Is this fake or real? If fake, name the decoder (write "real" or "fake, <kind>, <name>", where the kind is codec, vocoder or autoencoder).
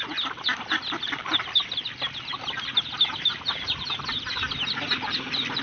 real